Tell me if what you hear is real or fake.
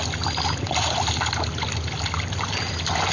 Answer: real